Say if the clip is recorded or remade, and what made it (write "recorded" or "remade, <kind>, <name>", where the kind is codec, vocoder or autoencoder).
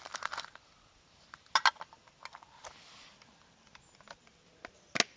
recorded